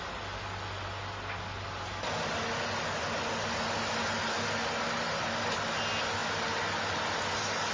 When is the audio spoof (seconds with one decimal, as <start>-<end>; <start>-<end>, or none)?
none